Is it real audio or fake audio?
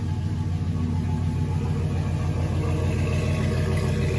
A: real